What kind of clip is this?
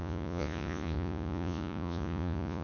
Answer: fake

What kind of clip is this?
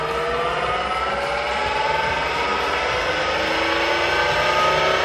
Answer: real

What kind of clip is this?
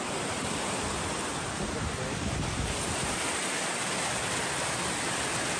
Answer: real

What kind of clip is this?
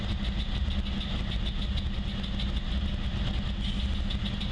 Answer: real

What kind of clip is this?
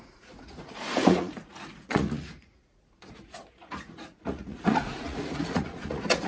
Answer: fake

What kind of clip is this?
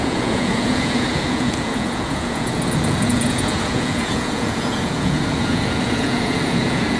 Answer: fake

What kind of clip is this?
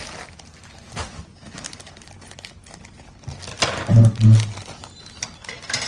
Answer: real